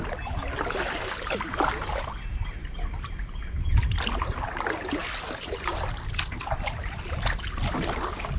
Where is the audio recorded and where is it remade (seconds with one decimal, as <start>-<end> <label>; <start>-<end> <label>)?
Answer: 0.0-8.4 recorded